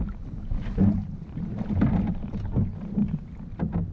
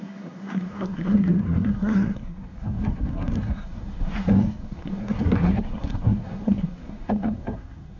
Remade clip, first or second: second